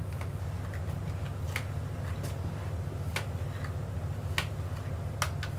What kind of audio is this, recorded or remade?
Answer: recorded